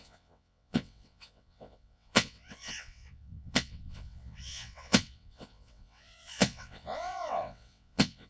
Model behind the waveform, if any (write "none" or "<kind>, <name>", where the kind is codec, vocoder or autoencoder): vocoder, WaveNeXt